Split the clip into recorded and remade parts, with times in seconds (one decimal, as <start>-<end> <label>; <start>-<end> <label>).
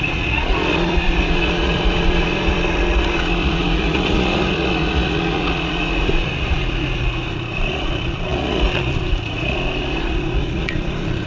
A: 0.0-11.3 remade